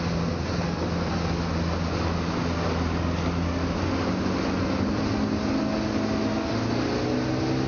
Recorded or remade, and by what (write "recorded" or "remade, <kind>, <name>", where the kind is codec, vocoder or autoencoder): recorded